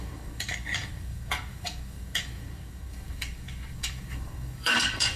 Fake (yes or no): yes